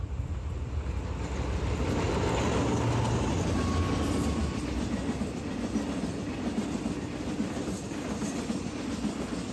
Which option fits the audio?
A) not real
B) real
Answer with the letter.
B